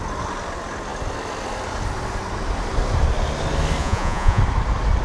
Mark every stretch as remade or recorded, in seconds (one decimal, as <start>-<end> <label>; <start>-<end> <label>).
0.0-3.8 recorded; 3.8-4.4 remade; 4.4-5.0 recorded